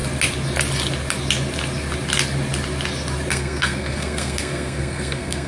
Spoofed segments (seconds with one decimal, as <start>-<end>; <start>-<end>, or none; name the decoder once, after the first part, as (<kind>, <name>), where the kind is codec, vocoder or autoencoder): 3.3-5.5 (codec, SNAC)